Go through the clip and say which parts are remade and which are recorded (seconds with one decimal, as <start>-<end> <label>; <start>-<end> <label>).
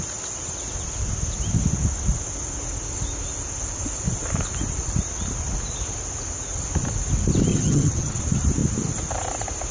0.0-7.5 recorded; 7.5-8.2 remade; 8.2-9.7 recorded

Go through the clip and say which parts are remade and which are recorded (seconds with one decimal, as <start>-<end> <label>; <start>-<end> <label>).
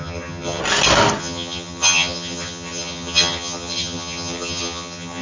0.0-0.6 remade; 0.6-1.2 recorded; 1.2-5.2 remade